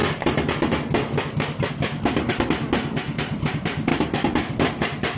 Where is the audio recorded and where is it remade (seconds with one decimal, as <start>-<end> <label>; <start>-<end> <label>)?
0.0-5.2 recorded

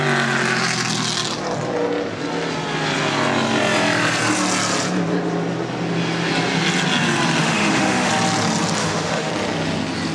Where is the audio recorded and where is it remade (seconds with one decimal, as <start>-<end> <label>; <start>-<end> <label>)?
0.0-7.4 recorded; 7.4-8.1 remade; 8.1-8.8 recorded; 8.8-9.3 remade; 9.3-10.1 recorded